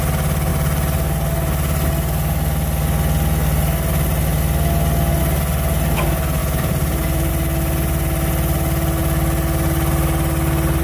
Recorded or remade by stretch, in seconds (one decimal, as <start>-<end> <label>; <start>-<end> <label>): 0.0-6.4 recorded; 6.4-7.3 remade; 7.3-10.8 recorded